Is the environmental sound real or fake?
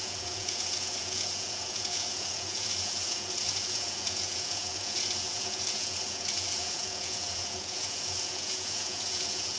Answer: fake